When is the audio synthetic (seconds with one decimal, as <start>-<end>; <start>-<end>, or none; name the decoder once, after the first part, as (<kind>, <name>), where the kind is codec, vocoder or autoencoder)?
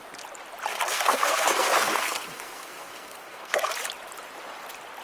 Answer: 0.7-3.7 (codec, SNAC)